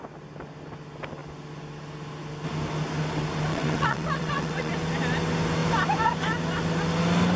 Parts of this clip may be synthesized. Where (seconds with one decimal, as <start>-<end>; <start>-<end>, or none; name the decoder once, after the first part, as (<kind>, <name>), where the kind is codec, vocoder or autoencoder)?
3.5-4.7 (vocoder, WaveNeXt)